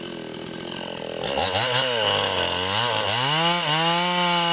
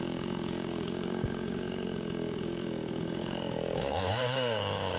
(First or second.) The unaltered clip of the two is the first